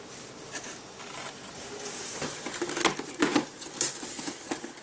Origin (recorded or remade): recorded